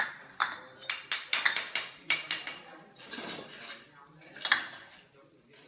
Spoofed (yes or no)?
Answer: no